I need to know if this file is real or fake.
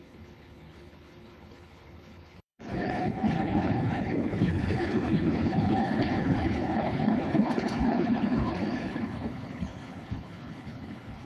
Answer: fake